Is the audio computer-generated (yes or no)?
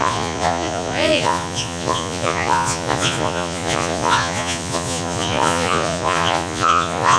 yes